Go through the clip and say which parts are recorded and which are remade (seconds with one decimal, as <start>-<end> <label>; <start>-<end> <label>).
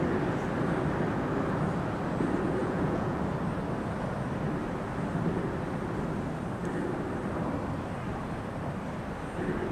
0.0-2.6 recorded; 2.6-3.2 remade; 3.2-9.7 recorded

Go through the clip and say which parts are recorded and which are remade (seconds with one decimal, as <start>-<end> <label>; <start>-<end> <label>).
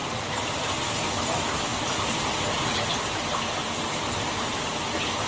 0.0-0.9 recorded; 0.9-5.3 remade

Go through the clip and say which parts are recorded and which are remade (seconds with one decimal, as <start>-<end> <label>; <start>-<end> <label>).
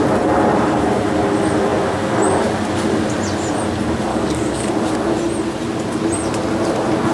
0.0-4.1 recorded; 4.1-4.7 remade; 4.7-7.1 recorded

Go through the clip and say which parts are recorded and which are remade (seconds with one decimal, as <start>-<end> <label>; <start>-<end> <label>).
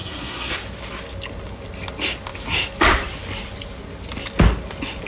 0.0-0.5 remade; 0.5-5.1 recorded